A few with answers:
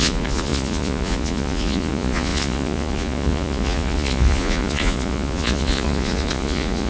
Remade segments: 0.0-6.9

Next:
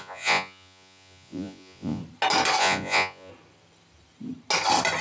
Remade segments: 0.0-2.0; 2.6-3.3

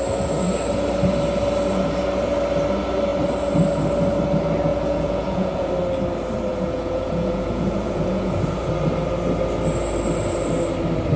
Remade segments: 4.7-5.7; 6.5-8.7

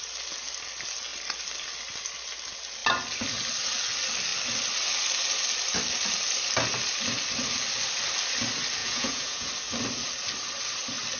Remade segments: 8.8-9.5

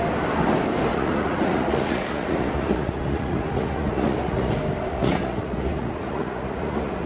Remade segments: 0.9-4.5; 4.9-7.1

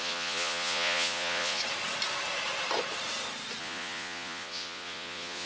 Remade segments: 0.0-1.6; 3.6-5.5

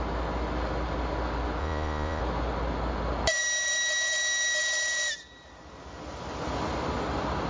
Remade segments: 1.6-2.2